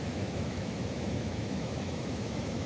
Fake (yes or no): yes